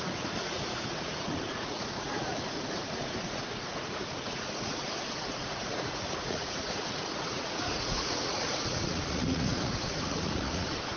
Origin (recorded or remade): remade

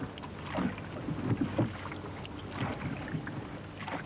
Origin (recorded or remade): recorded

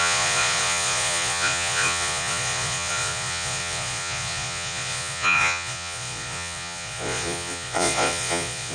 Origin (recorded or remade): remade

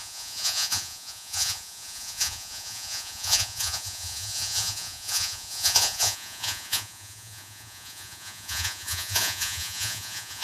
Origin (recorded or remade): remade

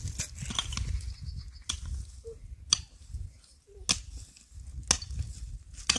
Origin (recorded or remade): recorded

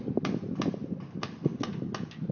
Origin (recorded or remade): recorded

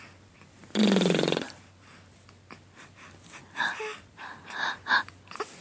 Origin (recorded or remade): recorded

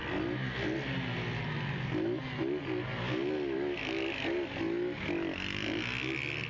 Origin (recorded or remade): recorded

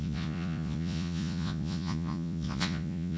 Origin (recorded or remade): remade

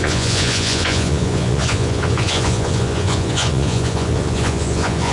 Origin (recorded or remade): remade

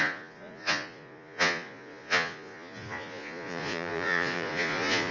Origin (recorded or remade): remade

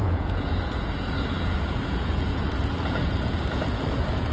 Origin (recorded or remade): remade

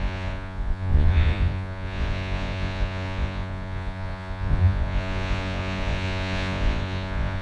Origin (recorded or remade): remade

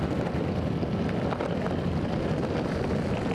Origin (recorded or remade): recorded